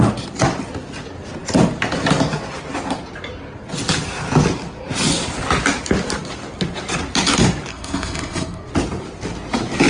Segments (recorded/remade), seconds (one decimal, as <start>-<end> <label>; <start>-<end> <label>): 0.0-7.7 recorded; 7.7-8.7 remade; 8.7-9.9 recorded